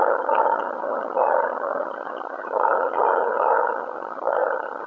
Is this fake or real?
fake